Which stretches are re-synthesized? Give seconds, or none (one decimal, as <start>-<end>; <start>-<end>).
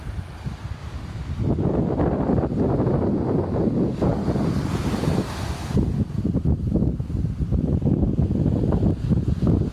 none